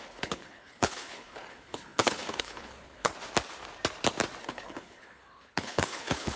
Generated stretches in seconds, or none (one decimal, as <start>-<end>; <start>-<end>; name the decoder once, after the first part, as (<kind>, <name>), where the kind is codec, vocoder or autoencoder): 0.0-3.1 (codec, HILCodec); 4.4-6.4

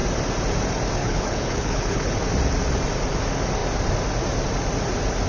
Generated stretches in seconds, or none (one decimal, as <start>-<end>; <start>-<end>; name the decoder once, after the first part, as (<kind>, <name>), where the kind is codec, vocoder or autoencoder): 1.0-2.1 (codec, HILCodec)

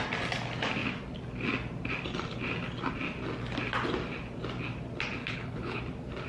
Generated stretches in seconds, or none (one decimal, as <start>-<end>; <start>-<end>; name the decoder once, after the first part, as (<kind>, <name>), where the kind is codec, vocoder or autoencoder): 5.2-5.8 (codec, HILCodec)

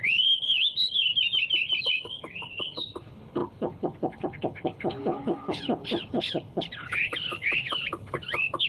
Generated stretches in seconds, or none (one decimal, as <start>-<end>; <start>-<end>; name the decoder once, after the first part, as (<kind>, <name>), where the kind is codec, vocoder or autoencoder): 0.0-1.1 (codec, HILCodec); 1.8-8.7

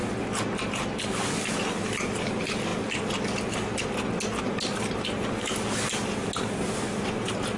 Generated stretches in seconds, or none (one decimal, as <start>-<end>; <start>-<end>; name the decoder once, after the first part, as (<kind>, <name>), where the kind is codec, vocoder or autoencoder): none

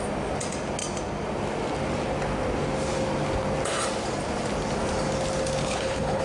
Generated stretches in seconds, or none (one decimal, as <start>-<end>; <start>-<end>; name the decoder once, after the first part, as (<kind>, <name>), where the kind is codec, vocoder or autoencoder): 5.6-6.2 (codec, HILCodec)

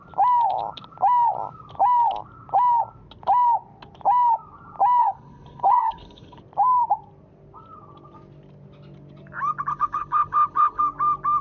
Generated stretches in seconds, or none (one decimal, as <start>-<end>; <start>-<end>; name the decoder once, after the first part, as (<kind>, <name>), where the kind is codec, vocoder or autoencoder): 5.0-6.4 (codec, HILCodec); 9.7-10.8